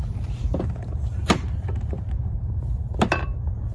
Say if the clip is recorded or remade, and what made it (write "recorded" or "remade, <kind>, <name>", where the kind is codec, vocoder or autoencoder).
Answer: remade, vocoder, BigVGAN v2